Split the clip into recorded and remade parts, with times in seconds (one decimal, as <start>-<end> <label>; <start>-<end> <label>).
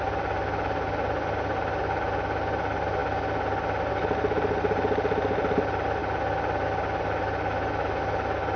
0.0-8.6 recorded